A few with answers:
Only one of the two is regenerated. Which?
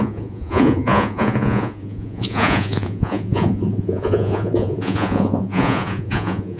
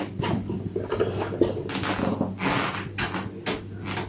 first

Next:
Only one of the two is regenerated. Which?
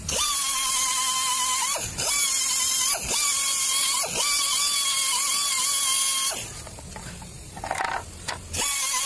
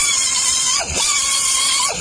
second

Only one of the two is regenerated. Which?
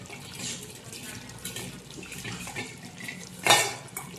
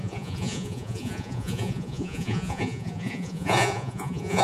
second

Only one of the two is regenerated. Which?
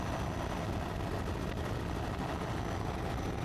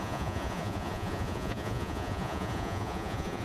second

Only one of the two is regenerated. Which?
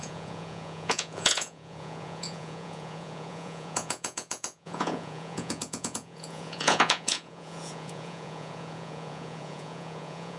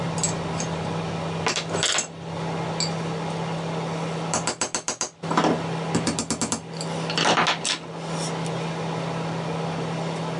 first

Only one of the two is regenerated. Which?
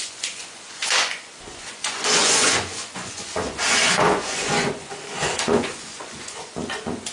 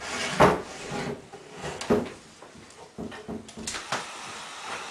first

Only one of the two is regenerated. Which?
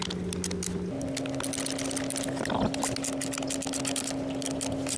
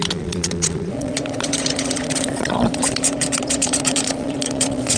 second